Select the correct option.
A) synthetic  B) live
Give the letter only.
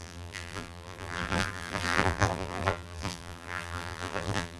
A